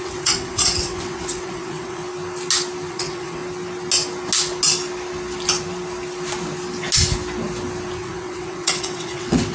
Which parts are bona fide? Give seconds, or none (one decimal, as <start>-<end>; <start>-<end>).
2.0-2.9; 3.4-7.9